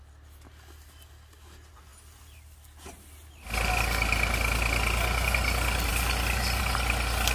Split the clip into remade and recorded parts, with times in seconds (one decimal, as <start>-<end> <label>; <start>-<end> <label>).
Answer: 0.0-7.3 recorded

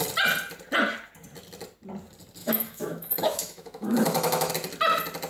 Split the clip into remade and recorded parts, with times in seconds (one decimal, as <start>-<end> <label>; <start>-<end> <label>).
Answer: 0.0-2.4 recorded; 2.4-4.5 remade; 4.5-5.3 recorded

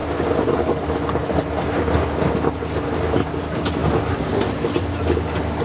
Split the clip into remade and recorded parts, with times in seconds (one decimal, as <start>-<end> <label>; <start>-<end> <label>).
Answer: 0.0-5.6 recorded

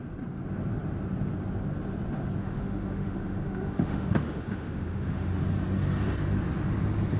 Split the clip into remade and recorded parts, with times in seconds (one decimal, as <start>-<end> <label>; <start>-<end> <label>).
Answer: 0.0-2.4 recorded; 2.4-5.4 remade; 5.4-7.2 recorded

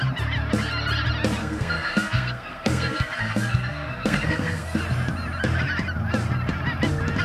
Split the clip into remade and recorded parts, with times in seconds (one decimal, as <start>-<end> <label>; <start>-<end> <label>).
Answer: 0.0-1.4 recorded; 1.4-4.8 remade; 4.8-7.2 recorded